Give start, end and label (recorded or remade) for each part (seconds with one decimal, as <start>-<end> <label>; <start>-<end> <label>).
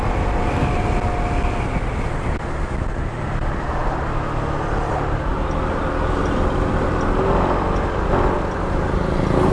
0.0-9.5 recorded